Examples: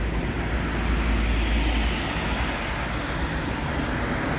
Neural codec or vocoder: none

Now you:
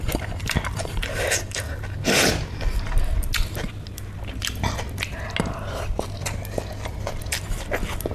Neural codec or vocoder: none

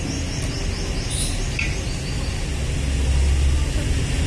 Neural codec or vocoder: none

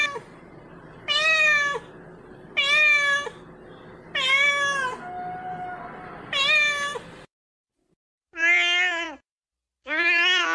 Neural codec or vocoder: none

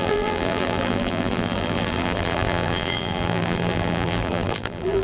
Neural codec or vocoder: vocoder, BigVGAN v2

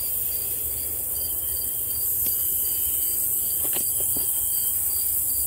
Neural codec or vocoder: none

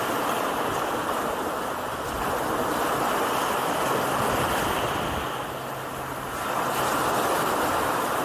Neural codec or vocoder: none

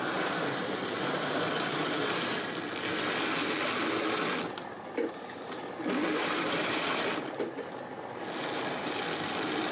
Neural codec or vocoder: none